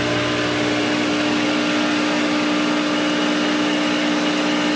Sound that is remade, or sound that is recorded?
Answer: recorded